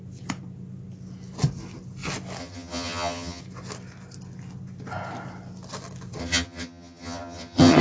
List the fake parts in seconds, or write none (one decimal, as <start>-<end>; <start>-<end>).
2.4-3.4; 6.2-7.8